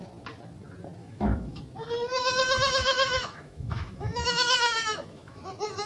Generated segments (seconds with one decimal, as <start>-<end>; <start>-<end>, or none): 1.0-1.6; 2.1-5.4